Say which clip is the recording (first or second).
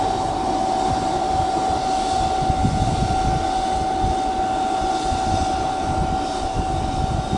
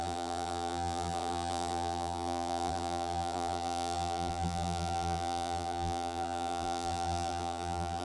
first